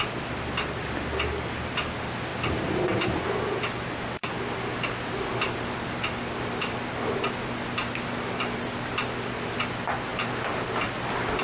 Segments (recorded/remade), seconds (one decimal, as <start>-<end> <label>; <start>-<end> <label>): 0.0-11.4 recorded